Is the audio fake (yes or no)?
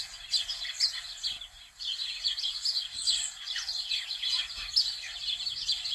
no